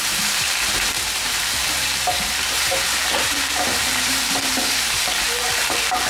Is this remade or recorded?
remade